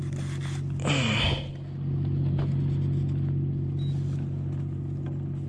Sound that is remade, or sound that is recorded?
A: recorded